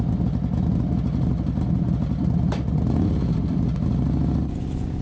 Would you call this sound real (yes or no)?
yes